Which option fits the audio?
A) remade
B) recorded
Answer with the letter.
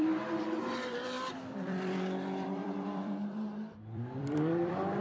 A